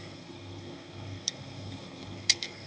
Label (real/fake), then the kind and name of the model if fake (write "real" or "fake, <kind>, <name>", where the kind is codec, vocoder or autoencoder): fake, codec, SNAC